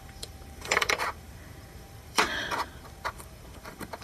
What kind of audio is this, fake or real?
fake